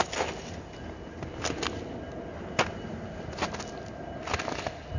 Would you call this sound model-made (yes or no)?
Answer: no